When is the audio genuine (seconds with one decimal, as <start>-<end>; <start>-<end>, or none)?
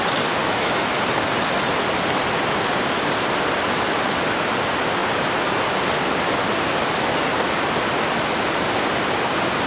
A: 0.0-0.4; 0.9-9.7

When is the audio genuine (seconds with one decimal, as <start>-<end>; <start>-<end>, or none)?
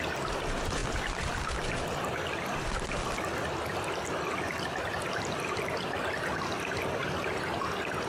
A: 0.0-8.1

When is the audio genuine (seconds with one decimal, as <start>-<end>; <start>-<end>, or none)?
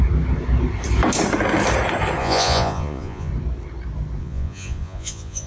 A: 0.0-2.2; 3.3-4.2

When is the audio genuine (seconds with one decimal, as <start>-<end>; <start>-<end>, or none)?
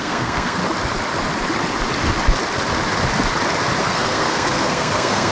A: 0.6-3.8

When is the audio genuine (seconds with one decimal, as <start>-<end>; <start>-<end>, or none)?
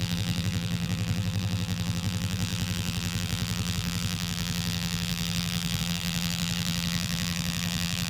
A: none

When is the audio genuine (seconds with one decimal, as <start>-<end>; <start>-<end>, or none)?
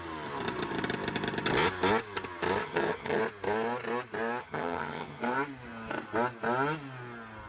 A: 0.0-2.6; 3.2-4.4; 5.2-7.5